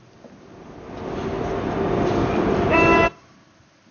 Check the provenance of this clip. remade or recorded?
recorded